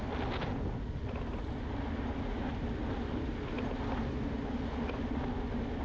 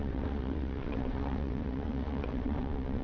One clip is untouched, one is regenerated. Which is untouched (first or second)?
first